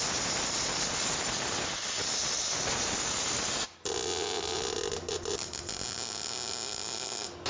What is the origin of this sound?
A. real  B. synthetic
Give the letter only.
A